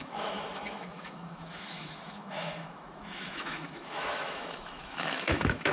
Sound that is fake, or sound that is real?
fake